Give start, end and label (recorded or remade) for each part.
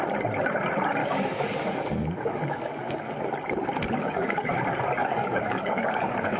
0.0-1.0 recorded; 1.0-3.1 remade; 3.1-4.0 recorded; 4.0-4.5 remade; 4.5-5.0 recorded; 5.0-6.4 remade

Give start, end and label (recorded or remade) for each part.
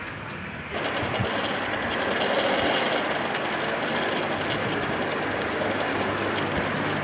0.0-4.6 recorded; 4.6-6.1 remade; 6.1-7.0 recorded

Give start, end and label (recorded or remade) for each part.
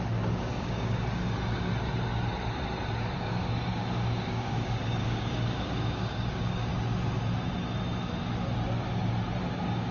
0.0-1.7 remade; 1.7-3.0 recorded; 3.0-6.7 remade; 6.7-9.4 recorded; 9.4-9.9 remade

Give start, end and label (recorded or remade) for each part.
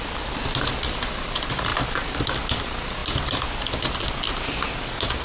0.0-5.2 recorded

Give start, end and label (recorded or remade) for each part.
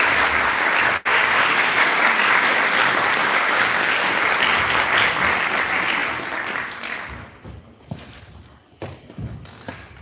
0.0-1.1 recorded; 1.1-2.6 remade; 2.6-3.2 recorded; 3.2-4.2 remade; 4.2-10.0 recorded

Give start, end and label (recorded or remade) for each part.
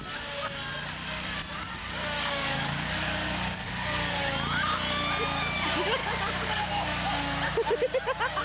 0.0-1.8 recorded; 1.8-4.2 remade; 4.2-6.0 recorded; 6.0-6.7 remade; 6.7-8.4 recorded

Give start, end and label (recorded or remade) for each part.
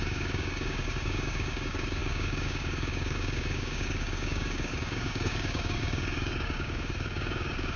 0.0-7.8 remade